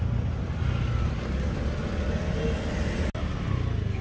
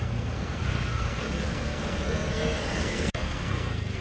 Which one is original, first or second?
first